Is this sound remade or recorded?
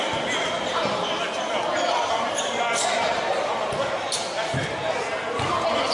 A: recorded